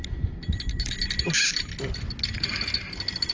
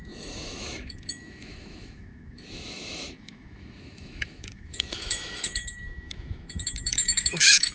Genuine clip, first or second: first